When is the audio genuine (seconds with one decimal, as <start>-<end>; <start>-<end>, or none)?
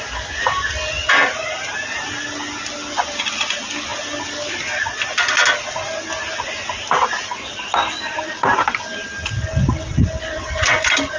0.0-11.2